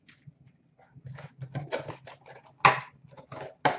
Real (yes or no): yes